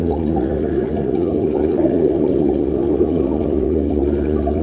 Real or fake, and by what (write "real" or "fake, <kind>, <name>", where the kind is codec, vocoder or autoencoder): fake, vocoder, Vocos